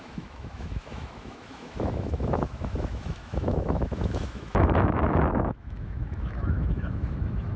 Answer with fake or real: fake